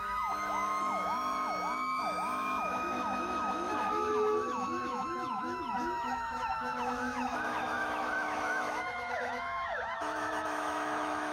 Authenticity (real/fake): fake